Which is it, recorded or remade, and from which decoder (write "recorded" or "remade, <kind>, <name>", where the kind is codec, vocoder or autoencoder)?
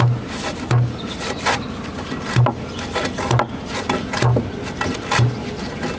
recorded